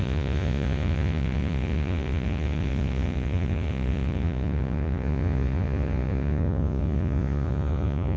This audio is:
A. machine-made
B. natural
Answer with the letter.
A